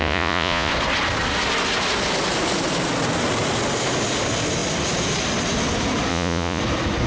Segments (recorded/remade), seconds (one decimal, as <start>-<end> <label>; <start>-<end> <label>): 0.0-0.7 remade; 0.7-6.1 recorded; 6.1-6.6 remade; 6.6-7.1 recorded